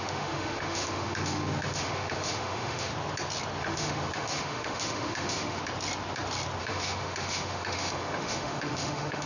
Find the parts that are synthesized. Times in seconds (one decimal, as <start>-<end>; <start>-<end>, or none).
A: 0.0-2.9; 3.6-5.6; 6.6-9.3